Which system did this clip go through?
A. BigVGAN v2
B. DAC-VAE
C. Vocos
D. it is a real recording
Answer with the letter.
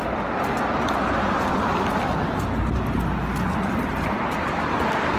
D